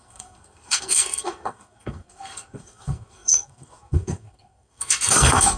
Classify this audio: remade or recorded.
remade